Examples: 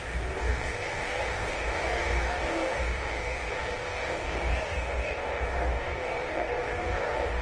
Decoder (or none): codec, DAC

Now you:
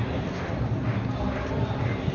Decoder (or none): none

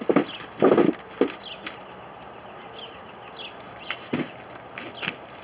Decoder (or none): none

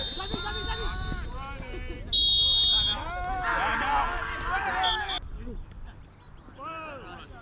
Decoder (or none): none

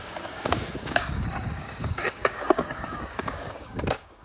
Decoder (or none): codec, DAC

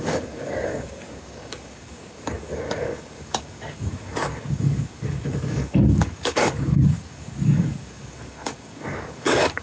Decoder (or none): codec, DAC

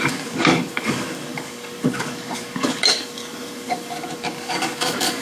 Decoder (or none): codec, DAC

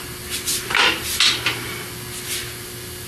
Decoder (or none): none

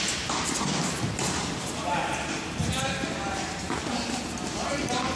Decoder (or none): none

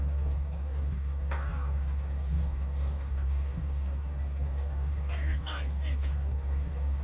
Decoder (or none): codec, DAC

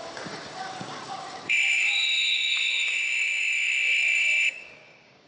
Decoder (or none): codec, DAC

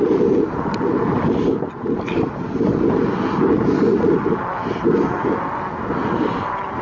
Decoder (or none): none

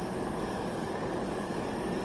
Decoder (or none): codec, DAC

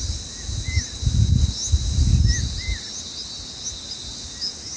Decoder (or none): none